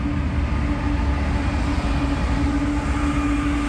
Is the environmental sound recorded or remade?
recorded